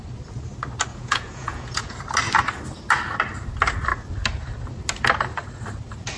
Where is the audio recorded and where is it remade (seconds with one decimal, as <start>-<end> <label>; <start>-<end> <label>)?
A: 0.0-0.9 recorded; 0.9-2.0 remade; 2.0-6.2 recorded